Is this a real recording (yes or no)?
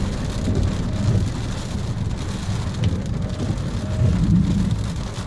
yes